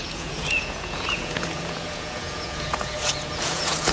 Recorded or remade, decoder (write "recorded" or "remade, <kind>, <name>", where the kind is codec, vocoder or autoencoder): remade, vocoder, Vocos